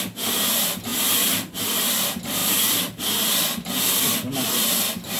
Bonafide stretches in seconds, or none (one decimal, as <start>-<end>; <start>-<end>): 0.0-5.2